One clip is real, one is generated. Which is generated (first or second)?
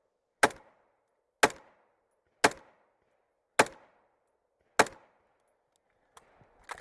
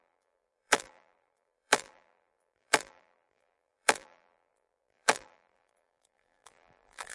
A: second